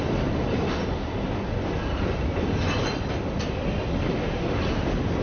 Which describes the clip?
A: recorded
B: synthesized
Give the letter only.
A